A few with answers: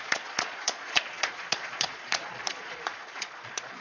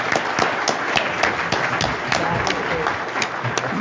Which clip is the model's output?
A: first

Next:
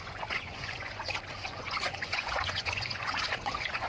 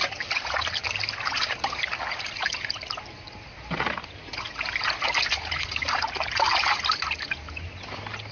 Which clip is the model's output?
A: first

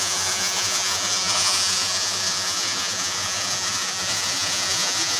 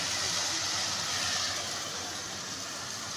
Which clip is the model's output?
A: first